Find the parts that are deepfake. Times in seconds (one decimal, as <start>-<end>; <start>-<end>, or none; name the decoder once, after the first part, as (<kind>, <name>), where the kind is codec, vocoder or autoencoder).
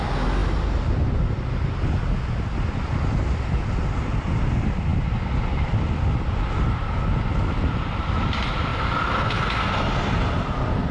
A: none